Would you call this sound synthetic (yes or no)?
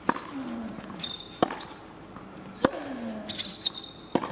no